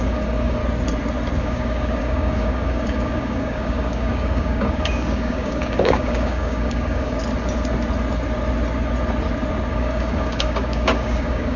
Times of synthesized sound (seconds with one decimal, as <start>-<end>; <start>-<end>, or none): 0.0-0.6; 1.4-7.2; 9.7-11.6